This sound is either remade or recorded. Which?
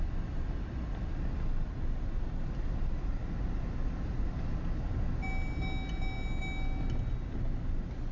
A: recorded